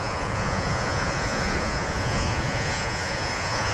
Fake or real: fake